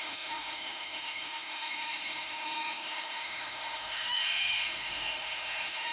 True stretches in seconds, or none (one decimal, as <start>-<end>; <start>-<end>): none